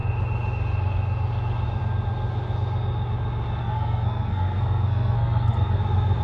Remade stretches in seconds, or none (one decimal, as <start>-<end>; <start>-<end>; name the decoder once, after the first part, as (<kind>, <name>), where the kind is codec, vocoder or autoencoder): 3.6-5.8 (codec, SNAC)